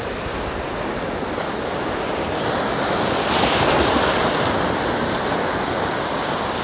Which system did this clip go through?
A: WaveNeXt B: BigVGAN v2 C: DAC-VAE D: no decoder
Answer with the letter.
D